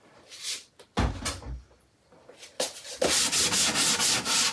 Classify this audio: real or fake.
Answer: real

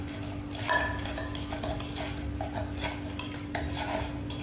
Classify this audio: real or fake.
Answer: real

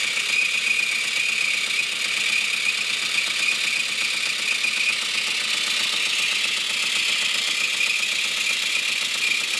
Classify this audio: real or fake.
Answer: real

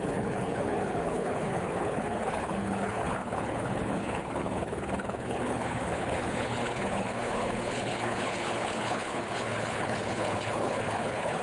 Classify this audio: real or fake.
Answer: fake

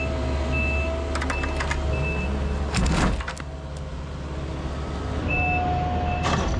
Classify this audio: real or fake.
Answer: real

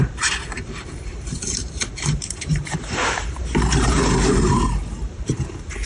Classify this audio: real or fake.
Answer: fake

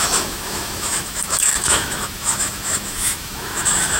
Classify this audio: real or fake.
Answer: fake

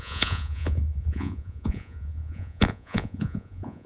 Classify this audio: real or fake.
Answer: fake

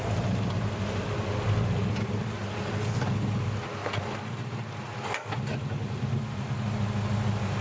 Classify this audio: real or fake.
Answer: real